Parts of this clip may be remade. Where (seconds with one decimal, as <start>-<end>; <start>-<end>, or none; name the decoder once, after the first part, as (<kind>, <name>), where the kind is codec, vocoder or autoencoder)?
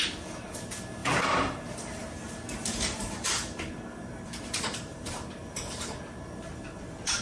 1.0-5.3 (vocoder, BigVGAN v2)